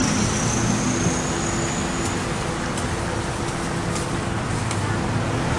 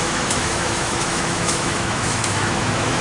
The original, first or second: first